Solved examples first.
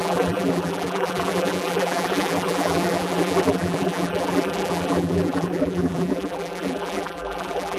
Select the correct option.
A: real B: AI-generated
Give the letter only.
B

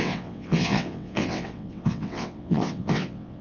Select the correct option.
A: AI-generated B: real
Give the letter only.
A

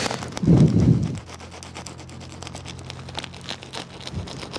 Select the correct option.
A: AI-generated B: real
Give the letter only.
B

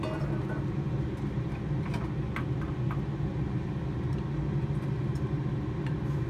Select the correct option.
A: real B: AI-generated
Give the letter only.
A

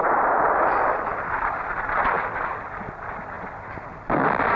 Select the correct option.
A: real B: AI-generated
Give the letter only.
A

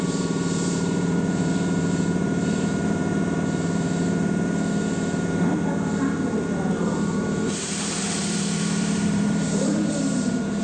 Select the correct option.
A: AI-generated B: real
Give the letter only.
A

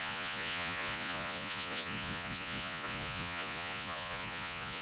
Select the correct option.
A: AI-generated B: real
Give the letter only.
A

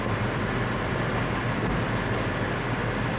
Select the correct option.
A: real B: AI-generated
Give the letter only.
A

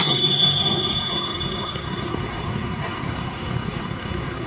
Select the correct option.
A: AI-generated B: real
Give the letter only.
A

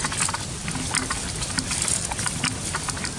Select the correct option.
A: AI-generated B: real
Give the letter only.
B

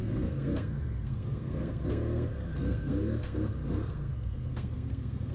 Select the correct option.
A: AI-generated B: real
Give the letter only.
A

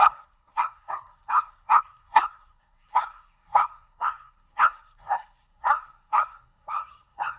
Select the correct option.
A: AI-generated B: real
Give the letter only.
A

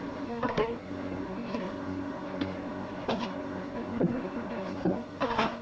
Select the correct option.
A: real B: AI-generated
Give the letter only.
B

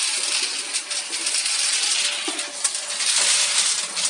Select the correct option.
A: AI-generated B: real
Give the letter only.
B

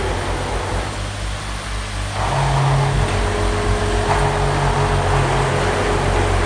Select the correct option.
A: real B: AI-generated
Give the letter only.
A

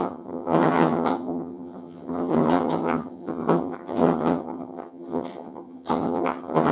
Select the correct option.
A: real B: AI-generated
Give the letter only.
B